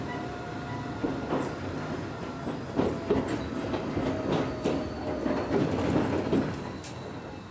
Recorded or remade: recorded